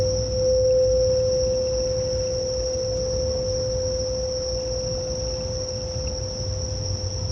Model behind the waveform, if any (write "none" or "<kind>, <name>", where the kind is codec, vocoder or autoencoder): none